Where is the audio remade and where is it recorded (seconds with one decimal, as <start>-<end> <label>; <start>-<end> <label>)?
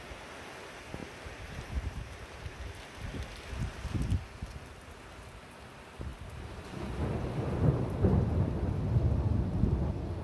0.0-1.0 recorded; 1.0-2.8 remade; 2.8-10.2 recorded